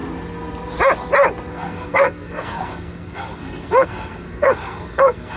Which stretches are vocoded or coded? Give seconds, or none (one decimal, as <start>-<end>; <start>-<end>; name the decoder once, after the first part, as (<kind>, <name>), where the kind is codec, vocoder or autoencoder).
1.5-5.4 (codec, SNAC)